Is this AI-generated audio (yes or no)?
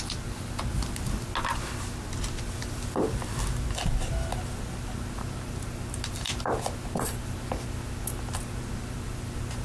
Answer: no